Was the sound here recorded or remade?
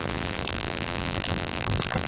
remade